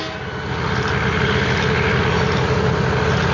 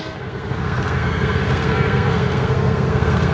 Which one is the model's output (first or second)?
second